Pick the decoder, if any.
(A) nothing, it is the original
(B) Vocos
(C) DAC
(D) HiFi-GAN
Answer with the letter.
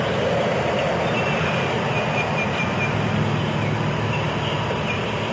A